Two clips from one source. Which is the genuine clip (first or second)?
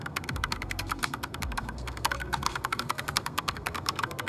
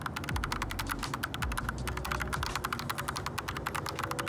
second